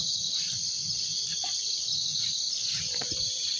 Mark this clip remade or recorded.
recorded